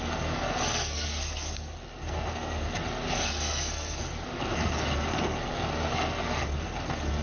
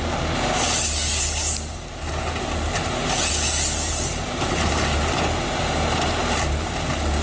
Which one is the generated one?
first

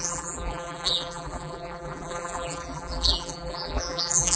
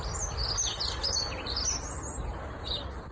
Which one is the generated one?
first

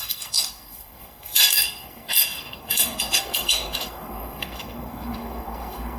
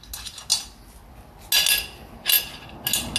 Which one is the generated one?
first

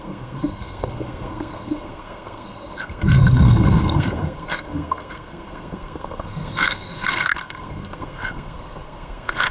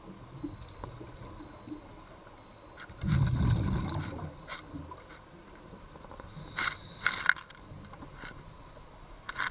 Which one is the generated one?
first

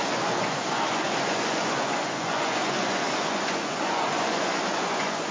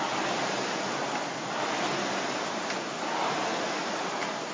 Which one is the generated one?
first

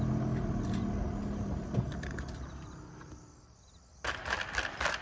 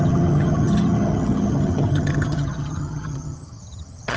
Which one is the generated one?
second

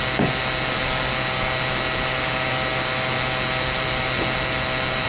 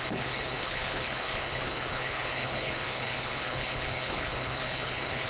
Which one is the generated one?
second